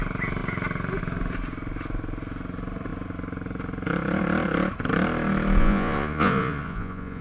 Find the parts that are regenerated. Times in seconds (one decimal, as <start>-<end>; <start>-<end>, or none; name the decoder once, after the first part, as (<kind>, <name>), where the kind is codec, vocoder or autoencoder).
5.6-7.2 (vocoder, Vocos)